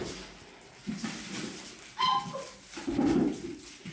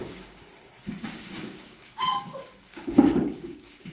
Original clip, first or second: first